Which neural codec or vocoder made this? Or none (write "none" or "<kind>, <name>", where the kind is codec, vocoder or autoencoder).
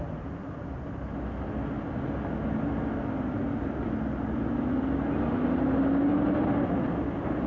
none